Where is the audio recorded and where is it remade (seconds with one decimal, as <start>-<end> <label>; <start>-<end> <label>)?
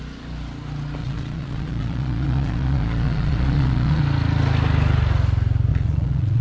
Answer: 0.0-1.0 recorded; 1.0-4.0 remade; 4.0-5.7 recorded; 5.7-6.4 remade